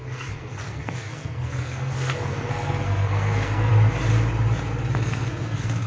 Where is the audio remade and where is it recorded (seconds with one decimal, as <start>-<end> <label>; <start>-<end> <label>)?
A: 0.0-3.7 remade; 3.7-4.9 recorded; 4.9-5.9 remade